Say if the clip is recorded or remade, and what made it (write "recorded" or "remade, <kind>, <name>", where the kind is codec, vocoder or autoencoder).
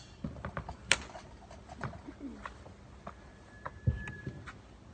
recorded